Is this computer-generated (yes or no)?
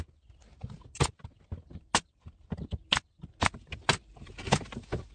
no